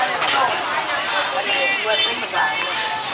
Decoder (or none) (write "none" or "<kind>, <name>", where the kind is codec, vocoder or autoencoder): none